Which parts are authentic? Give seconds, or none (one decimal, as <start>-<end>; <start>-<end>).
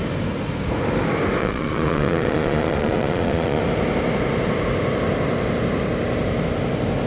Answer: 0.0-1.4; 3.6-7.1